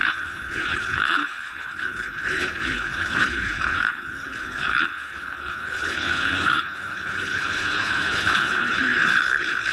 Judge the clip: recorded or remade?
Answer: remade